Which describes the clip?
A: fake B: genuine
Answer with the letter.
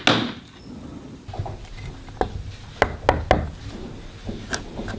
B